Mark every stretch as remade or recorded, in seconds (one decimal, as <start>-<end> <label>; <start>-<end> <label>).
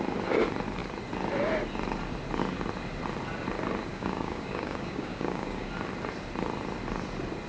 0.0-3.9 recorded; 3.9-5.7 remade; 5.7-7.5 recorded